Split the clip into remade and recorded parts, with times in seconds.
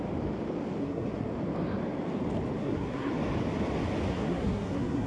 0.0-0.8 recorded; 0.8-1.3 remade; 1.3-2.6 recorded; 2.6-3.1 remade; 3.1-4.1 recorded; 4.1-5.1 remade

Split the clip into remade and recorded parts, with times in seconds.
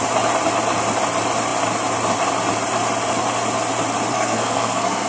0.0-4.1 recorded; 4.1-5.1 remade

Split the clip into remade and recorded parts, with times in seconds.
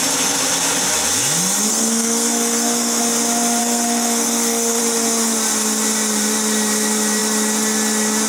0.0-1.7 recorded; 1.7-3.0 remade; 3.0-3.6 recorded; 3.6-4.8 remade; 4.8-8.3 recorded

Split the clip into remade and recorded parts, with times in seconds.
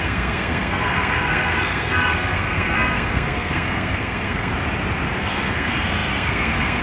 0.0-4.5 remade; 4.5-5.2 recorded; 5.2-6.8 remade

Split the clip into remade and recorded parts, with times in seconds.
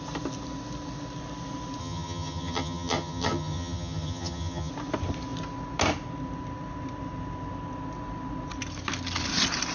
0.0-1.8 recorded; 1.8-4.7 remade; 4.7-9.7 recorded